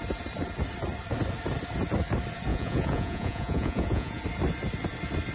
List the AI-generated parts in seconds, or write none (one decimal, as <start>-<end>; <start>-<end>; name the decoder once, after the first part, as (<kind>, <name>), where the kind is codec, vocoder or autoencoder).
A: 2.5-4.2 (vocoder, Vocos)